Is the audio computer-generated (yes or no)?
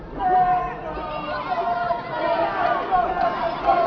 no